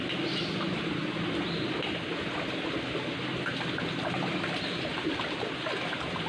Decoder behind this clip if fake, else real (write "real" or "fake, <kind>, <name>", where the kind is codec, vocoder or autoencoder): real